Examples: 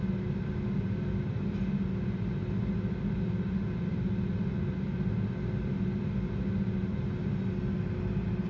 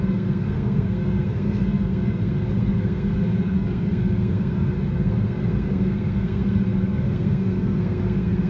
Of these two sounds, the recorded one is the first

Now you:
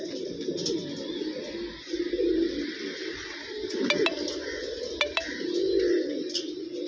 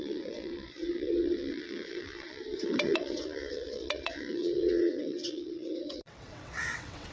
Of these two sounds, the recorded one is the first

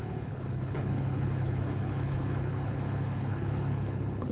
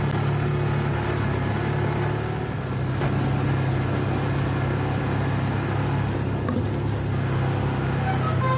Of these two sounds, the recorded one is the second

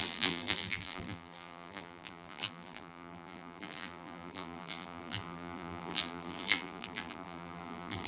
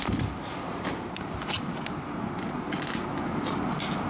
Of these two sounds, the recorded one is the second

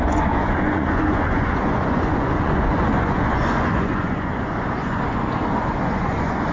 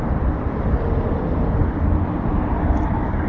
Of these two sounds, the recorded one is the second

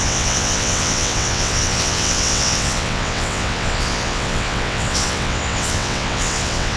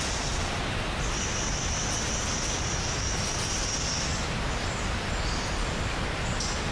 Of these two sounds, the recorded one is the second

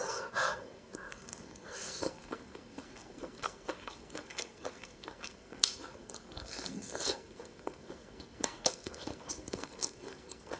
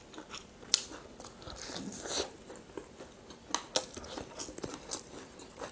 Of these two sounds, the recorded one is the second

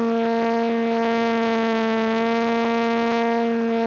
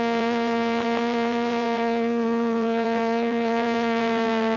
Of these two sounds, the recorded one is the first